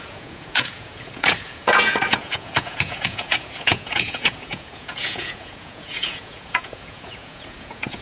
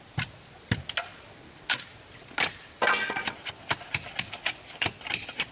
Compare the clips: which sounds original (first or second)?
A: second